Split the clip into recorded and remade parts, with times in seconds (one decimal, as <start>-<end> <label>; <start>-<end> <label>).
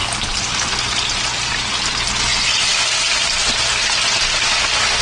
0.0-5.0 recorded